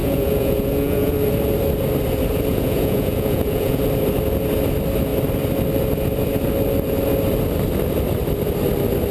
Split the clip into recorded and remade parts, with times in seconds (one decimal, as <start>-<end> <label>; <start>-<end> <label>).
0.0-1.1 remade; 1.1-2.5 recorded; 2.5-3.8 remade; 3.8-9.1 recorded